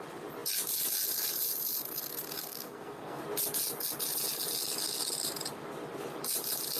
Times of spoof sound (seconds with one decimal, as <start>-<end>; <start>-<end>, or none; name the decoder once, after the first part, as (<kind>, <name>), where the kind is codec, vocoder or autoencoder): 2.4-3.2 (codec, SNAC)